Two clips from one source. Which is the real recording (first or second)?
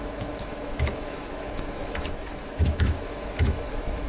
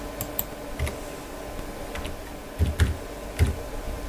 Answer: second